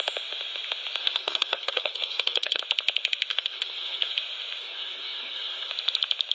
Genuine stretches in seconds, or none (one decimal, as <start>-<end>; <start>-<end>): 0.0-1.0; 2.6-3.3; 4.1-4.6; 5.7-6.3